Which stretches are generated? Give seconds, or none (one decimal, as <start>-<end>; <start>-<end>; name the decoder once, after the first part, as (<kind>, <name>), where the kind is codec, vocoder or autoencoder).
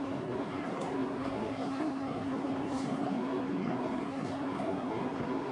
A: 0.0-5.5 (codec, SNAC)